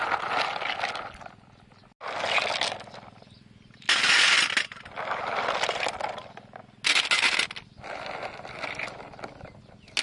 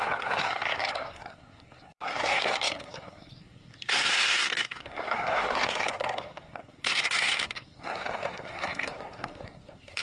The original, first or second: first